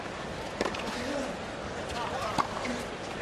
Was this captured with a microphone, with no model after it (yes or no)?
yes